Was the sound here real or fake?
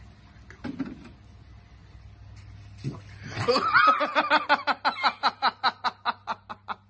real